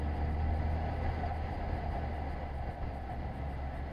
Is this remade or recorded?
recorded